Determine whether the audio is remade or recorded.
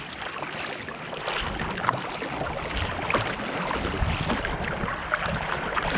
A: recorded